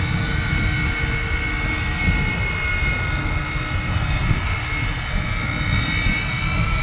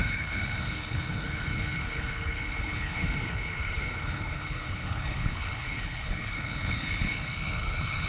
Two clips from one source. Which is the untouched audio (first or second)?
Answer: first